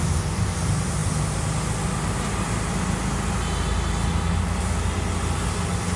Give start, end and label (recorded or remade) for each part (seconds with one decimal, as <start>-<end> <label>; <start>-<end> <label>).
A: 0.0-6.0 recorded